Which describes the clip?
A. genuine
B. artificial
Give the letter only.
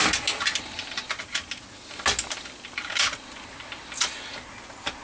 A